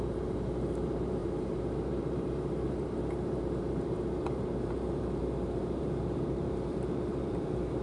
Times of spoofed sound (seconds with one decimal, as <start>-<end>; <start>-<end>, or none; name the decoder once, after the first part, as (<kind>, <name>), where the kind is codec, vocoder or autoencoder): 0.0-7.8 (vocoder, BigVGAN v2)

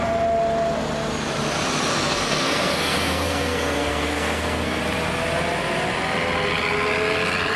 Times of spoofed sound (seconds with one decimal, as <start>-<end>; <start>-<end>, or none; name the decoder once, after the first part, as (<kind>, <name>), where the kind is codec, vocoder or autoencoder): 1.9-4.8 (codec, SNAC)

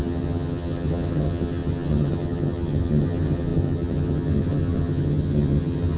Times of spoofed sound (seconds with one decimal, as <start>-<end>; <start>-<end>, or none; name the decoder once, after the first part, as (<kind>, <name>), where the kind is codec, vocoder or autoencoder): 0.0-6.0 (vocoder, HiFi-GAN)

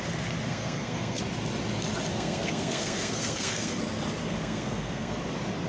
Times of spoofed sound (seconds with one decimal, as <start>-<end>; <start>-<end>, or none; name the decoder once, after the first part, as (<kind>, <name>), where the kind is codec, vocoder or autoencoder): 0.5-1.2 (codec, SNAC); 2.1-3.8; 4.2-5.2

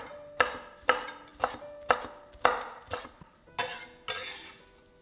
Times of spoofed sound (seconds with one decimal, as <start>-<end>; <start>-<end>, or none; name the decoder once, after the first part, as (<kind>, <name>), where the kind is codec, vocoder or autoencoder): none

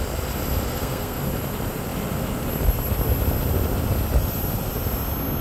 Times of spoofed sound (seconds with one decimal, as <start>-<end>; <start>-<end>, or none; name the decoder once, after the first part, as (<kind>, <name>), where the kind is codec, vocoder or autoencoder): 0.7-1.2 (codec, SNAC)

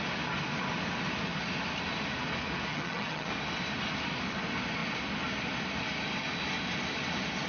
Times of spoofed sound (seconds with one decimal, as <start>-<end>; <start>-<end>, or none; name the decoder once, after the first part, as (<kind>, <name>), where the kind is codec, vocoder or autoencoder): 2.7-3.3 (vocoder, HiFi-GAN)